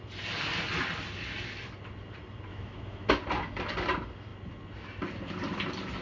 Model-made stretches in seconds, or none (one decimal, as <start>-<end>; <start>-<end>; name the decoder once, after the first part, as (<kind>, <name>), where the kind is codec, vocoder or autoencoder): 2.5-3.1 (autoencoder, DAC-VAE)